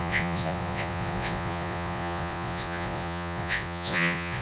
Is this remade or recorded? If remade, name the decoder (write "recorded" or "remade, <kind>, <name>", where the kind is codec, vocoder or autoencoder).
remade, vocoder, Vocos